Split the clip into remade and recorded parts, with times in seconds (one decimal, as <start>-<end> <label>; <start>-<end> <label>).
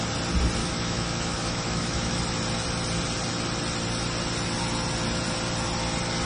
0.0-0.6 recorded; 0.6-2.2 remade; 2.2-6.2 recorded